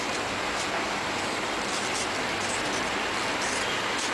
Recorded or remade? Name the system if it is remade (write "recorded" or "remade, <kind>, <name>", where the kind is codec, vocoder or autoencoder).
recorded